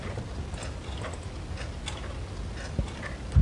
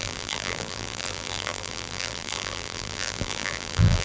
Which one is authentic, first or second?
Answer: first